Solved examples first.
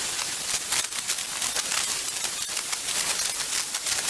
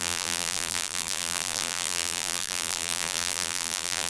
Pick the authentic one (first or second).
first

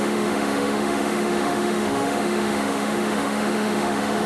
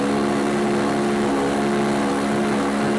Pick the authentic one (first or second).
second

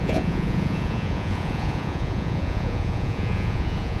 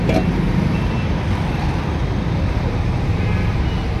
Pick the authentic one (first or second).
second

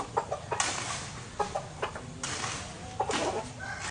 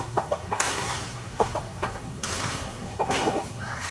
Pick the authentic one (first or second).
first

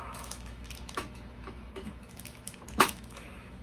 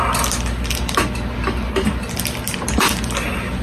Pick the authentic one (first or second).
second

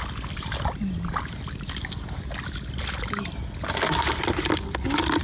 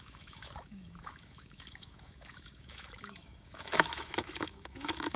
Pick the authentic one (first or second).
first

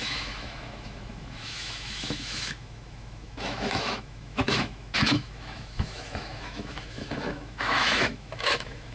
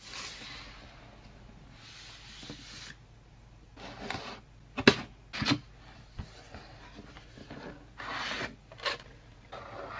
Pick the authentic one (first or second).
second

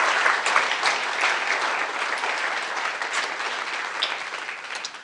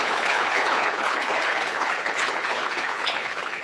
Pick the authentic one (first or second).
first